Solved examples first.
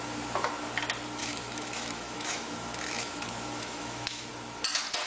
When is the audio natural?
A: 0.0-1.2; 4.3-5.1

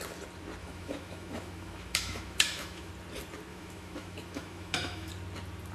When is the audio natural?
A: 0.0-0.6; 2.9-3.5; 5.1-5.7

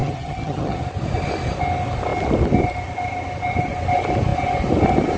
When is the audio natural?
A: 0.8-5.2